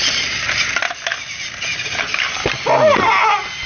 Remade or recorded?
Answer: recorded